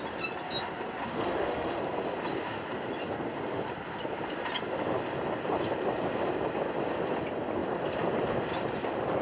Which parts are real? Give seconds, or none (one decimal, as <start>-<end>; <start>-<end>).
0.0-1.1; 1.8-9.2